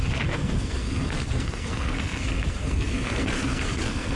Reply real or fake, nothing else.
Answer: fake